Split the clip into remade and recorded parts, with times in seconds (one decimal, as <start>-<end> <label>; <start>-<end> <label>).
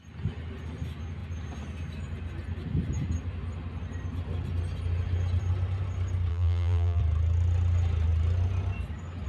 0.0-6.3 recorded; 6.3-7.0 remade; 7.0-9.3 recorded